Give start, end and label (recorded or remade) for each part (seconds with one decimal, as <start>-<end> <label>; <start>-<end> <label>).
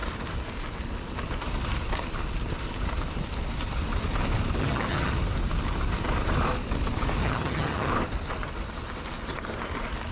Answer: 0.0-4.6 recorded; 4.6-5.1 remade; 5.1-7.2 recorded; 7.2-7.9 remade; 7.9-10.1 recorded